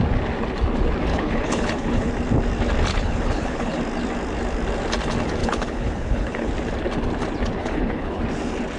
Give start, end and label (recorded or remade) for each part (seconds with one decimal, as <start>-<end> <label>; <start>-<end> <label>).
0.0-1.1 recorded; 1.1-2.1 remade; 2.1-2.9 recorded; 2.9-3.8 remade; 3.8-5.4 recorded; 5.4-6.5 remade; 6.5-7.6 recorded; 7.6-8.2 remade; 8.2-8.8 recorded